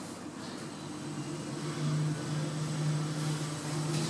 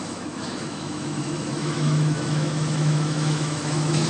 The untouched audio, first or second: first